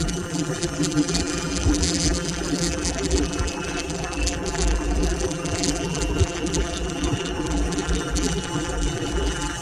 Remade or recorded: remade